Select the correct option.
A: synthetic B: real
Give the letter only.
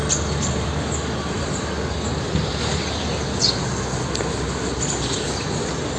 B